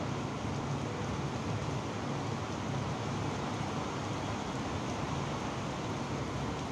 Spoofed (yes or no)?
no